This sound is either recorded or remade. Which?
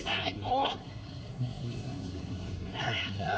remade